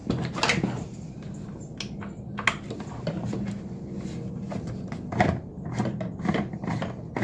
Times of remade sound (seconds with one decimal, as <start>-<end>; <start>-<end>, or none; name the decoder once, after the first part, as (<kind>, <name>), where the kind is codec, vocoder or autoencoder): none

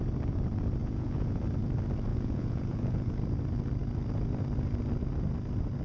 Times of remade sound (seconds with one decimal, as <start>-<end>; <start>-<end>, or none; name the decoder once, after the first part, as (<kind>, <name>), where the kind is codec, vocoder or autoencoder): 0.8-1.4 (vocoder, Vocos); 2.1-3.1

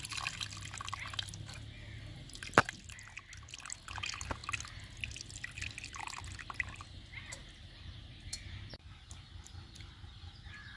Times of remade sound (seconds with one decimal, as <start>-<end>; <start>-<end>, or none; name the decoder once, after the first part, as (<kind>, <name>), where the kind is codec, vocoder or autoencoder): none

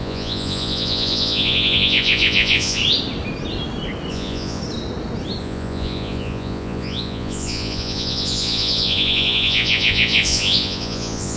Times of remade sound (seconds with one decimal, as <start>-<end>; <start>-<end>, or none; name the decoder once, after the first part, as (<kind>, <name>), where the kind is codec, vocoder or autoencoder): 0.0-2.8 (vocoder, Vocos); 4.1-4.6; 5.4-11.4

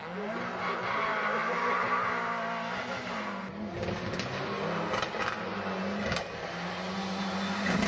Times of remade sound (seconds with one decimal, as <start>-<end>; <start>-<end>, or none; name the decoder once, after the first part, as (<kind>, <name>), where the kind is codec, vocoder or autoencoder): none

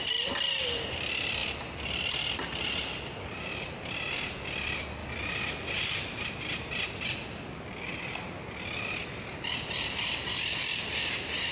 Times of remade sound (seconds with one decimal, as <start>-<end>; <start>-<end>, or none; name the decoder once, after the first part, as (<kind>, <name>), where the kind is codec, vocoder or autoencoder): none

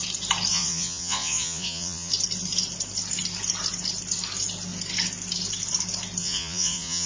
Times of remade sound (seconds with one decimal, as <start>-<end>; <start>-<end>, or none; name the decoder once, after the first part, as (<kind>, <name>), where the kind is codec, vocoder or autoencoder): 0.5-2.1 (vocoder, Vocos); 6.2-7.1